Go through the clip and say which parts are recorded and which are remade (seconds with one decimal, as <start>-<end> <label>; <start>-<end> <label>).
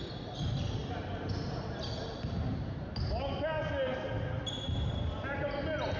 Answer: 0.0-6.0 recorded